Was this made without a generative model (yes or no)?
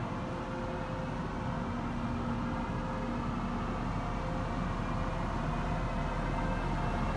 yes